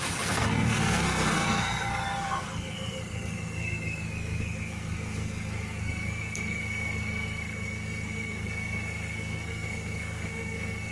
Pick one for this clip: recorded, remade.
remade